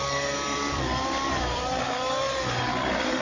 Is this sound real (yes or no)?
no